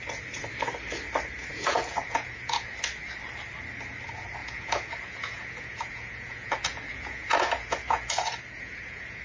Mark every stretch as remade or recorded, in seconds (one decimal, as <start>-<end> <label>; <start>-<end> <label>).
0.0-1.5 recorded; 1.5-2.7 remade; 2.7-4.4 recorded; 4.4-9.2 remade